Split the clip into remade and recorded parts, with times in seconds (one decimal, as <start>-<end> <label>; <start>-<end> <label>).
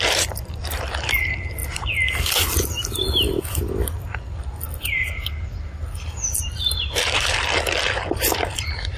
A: 0.0-1.6 remade; 1.6-6.8 recorded; 6.8-9.0 remade